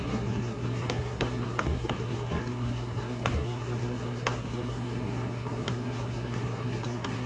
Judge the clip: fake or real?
fake